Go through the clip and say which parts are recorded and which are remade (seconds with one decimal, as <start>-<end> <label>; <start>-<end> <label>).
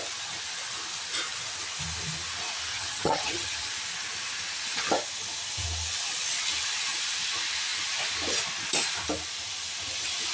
0.0-2.7 recorded; 2.7-3.7 remade; 3.7-10.3 recorded